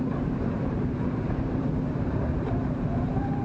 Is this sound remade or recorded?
remade